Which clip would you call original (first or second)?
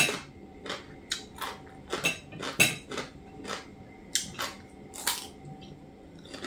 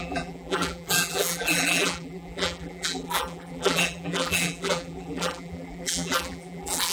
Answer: first